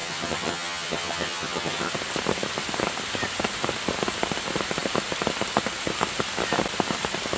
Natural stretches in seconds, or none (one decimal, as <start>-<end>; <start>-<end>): 1.9-7.4